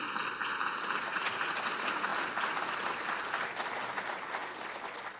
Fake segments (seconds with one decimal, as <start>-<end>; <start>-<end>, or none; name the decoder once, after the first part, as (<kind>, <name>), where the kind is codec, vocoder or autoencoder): 1.1-1.6 (vocoder, Vocos)